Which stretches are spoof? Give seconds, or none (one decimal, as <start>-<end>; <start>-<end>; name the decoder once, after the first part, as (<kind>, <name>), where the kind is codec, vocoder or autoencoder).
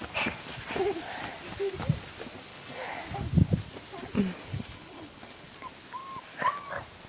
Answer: 2.5-3.0 (codec, HILCodec); 4.5-5.5